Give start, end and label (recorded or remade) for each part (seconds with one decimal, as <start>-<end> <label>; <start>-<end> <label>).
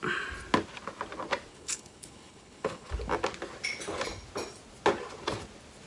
0.0-1.5 recorded; 1.5-2.9 remade; 2.9-5.9 recorded